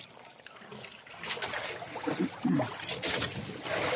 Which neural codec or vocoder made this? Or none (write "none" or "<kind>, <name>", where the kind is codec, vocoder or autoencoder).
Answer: none